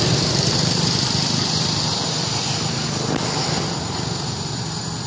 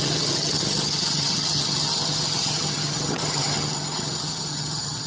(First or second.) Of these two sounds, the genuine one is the first